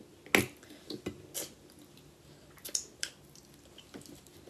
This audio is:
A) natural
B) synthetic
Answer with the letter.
A